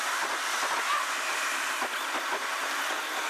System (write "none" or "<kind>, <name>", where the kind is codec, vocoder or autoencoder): none